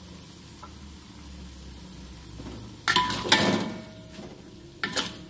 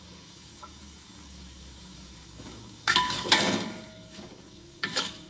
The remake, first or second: second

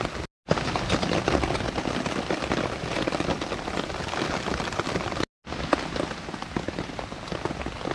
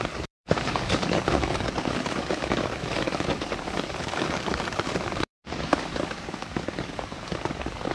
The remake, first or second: second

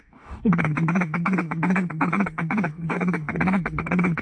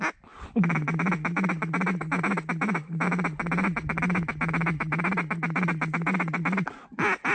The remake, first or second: first